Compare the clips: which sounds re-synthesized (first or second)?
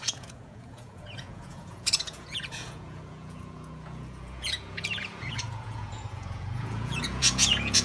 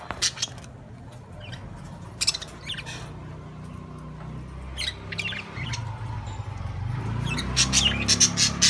first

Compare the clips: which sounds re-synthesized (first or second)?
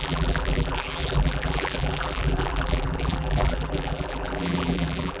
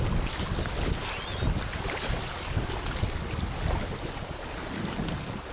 first